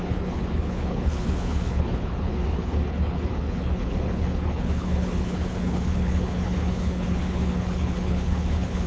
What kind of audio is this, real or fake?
fake